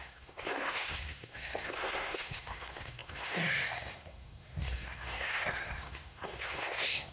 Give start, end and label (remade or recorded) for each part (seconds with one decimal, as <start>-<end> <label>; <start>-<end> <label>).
0.0-7.1 remade